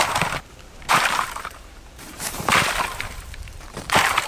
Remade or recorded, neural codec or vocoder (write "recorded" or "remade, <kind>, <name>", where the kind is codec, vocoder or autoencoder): remade, vocoder, BigVGAN v2